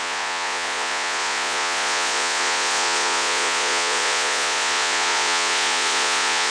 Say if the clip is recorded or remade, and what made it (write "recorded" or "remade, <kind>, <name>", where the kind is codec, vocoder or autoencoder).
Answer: remade, vocoder, Vocos